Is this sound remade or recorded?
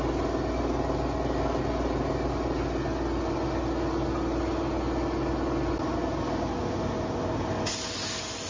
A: recorded